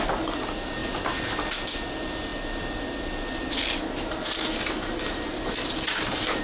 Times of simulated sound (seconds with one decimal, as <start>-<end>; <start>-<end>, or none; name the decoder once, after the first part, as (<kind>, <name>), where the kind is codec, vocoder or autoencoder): none

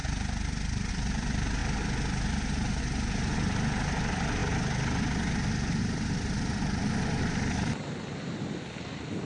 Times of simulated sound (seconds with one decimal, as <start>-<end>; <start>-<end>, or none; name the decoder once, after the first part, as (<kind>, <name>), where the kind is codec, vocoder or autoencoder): 0.9-1.6 (vocoder, BigVGAN v2); 2.8-4.4; 5.8-9.3